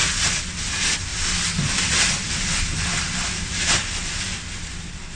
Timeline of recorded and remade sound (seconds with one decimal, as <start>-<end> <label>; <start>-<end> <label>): 0.0-5.2 recorded